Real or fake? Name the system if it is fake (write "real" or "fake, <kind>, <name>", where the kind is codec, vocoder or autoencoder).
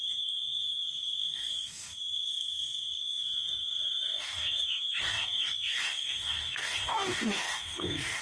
fake, codec, DAC